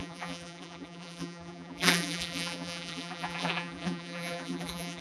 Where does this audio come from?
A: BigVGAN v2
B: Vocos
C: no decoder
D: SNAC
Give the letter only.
A